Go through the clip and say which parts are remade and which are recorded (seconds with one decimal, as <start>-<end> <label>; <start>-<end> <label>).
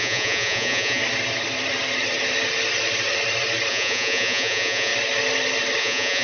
0.0-1.0 remade; 1.0-3.7 recorded; 3.7-4.9 remade; 4.9-5.8 recorded; 5.8-6.2 remade